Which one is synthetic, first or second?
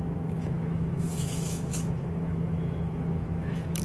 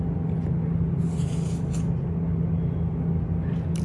first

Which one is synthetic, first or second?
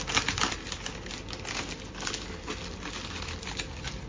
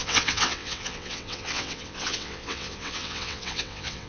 second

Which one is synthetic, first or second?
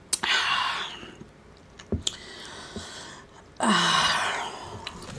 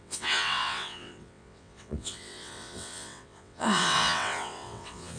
second